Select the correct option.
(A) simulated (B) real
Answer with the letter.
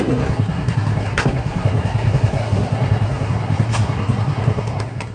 A